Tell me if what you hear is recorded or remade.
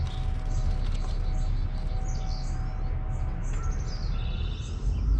recorded